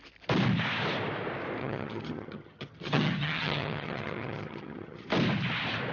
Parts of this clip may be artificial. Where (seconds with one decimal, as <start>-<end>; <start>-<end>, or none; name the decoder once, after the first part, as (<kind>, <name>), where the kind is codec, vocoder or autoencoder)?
1.6-5.1 (vocoder, HiFi-GAN)